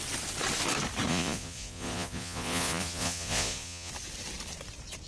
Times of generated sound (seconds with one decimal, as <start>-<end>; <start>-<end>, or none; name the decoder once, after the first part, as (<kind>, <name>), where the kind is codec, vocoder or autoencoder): 1.1-3.9 (vocoder, Vocos)